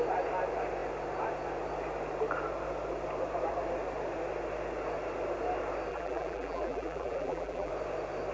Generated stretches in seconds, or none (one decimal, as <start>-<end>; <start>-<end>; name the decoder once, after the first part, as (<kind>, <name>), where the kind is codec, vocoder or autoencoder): 5.9-7.7 (vocoder, BigVGAN v2)